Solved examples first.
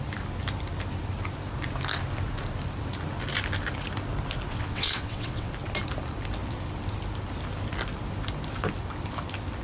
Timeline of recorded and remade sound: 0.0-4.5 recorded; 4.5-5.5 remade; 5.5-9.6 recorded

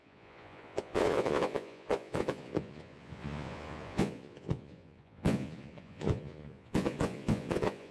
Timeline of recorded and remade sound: 0.0-7.9 remade

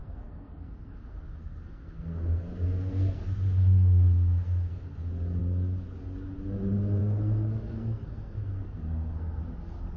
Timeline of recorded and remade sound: 0.0-5.0 remade; 5.0-7.0 recorded; 7.0-9.4 remade; 9.4-10.0 recorded

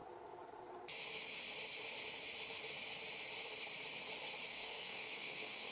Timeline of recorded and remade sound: 0.0-4.5 recorded; 4.5-5.7 remade